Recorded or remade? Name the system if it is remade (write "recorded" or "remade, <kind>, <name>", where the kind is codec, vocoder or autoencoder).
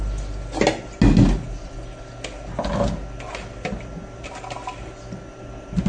recorded